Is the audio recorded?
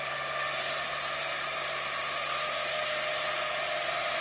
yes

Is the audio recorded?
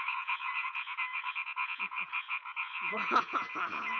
no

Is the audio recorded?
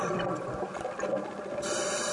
yes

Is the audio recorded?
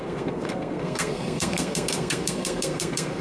no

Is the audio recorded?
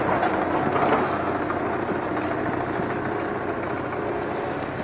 yes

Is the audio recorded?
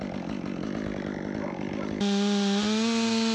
yes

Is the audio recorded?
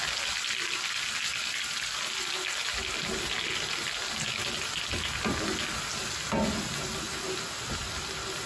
yes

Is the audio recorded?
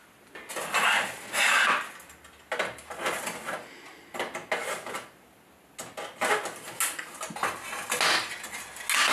yes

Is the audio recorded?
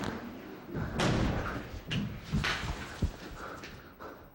yes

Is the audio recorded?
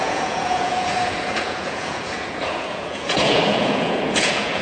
no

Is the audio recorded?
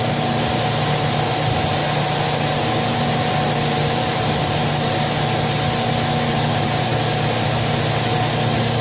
yes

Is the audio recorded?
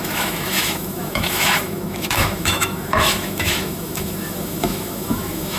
no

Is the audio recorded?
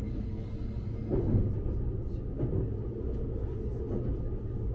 yes